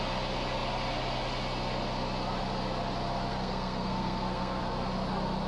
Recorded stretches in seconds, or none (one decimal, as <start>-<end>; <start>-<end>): 0.0-3.3; 4.6-5.5